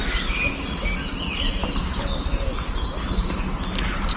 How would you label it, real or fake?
real